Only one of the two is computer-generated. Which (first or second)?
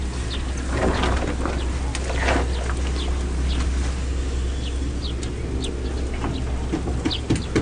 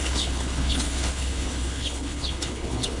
second